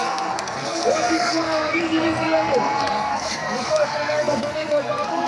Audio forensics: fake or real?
fake